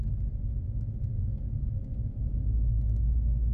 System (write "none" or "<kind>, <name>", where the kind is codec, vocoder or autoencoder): none